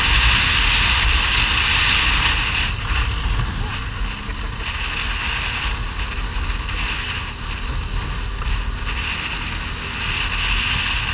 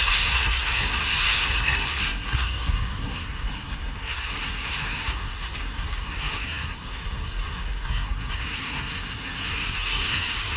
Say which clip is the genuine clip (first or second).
first